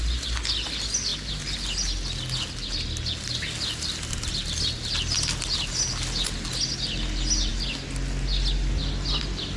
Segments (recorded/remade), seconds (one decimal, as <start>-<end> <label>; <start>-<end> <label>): 0.0-9.6 recorded